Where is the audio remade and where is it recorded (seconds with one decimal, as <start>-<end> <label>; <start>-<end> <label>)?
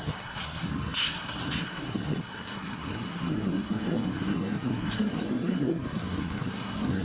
0.0-7.0 remade